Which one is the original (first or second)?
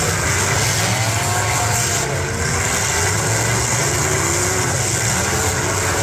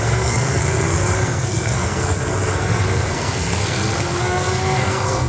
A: first